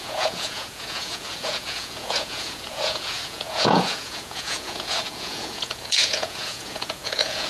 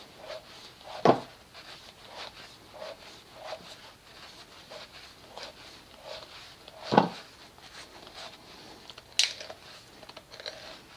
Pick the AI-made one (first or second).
first